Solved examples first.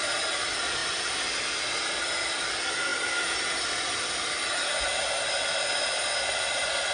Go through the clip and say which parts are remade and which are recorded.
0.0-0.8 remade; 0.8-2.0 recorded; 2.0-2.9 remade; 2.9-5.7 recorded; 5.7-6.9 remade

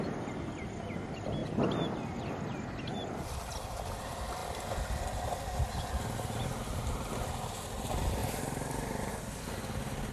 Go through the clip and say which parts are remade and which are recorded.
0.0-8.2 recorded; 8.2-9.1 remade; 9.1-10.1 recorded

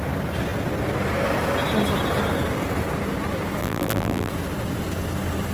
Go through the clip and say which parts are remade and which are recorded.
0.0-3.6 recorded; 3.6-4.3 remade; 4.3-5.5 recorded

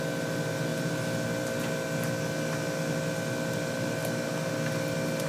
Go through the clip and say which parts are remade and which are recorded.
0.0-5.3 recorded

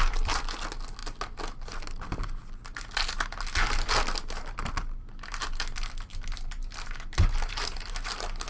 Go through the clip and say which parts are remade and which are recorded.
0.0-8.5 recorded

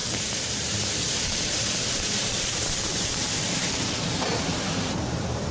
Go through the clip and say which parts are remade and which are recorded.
0.0-5.5 remade